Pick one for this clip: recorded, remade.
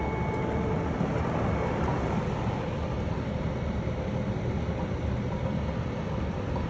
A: recorded